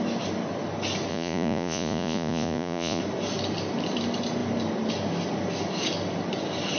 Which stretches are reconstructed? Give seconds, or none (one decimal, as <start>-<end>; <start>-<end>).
1.1-3.0